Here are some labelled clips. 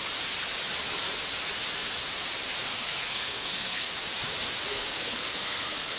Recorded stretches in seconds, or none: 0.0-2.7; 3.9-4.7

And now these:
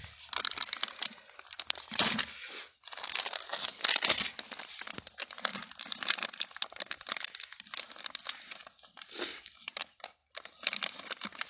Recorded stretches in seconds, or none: 0.0-11.5

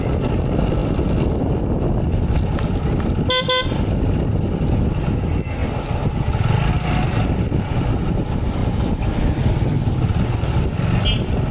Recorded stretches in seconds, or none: 0.0-11.5

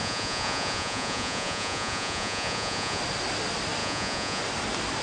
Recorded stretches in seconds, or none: 3.0-3.8; 4.4-5.0

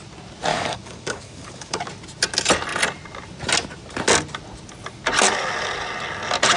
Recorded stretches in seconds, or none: 0.0-0.5; 1.9-6.6

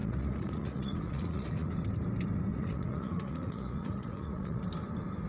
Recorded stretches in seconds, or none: 1.7-2.5; 4.6-5.3